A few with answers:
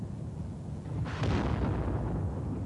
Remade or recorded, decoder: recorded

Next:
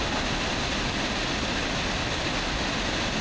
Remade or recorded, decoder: recorded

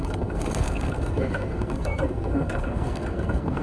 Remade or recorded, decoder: remade, codec, SNAC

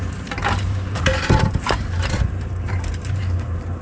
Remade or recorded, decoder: remade, vocoder, BigVGAN v2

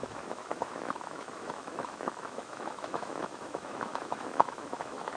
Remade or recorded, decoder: remade, autoencoder, DAC-VAE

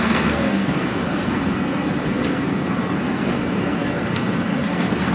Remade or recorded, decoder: remade, codec, SNAC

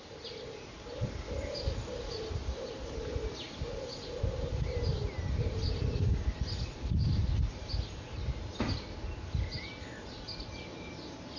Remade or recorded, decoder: recorded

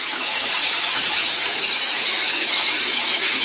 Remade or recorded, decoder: remade, autoencoder, DAC-VAE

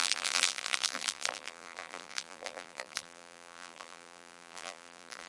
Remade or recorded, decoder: remade, vocoder, BigVGAN v2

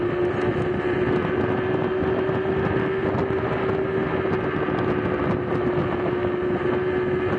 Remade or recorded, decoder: recorded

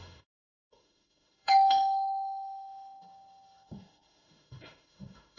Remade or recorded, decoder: remade, autoencoder, DAC-VAE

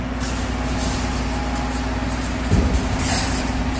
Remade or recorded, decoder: recorded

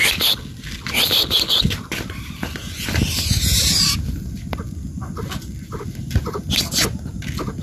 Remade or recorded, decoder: recorded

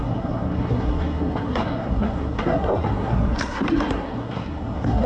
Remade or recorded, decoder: remade, codec, SNAC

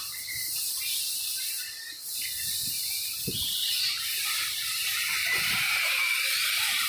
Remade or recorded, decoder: recorded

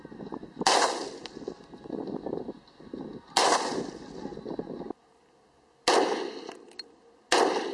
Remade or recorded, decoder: recorded